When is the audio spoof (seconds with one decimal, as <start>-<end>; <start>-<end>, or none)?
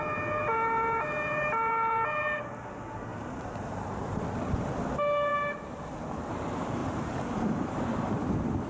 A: 0.5-2.5; 3.1-4.2; 6.8-8.1